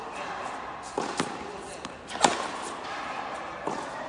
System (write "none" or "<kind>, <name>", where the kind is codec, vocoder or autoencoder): none